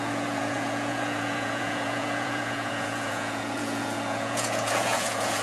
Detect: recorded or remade remade